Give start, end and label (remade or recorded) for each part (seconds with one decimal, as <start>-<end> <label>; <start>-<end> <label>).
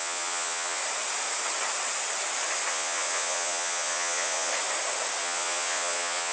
0.0-0.8 remade; 0.8-2.7 recorded; 2.7-4.5 remade; 4.5-5.2 recorded; 5.2-6.3 remade